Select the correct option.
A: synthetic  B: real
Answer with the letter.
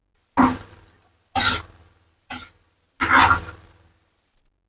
B